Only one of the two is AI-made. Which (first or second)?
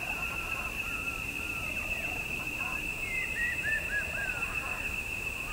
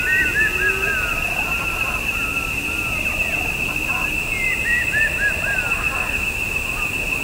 first